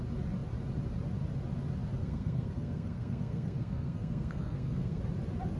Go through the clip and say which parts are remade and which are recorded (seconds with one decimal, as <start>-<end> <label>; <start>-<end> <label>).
0.0-2.0 recorded; 2.0-5.0 remade; 5.0-5.6 recorded